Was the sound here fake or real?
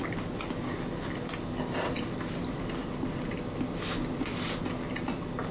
real